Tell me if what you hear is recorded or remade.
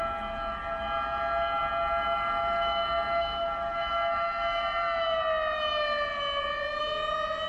recorded